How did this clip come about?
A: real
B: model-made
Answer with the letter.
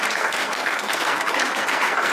B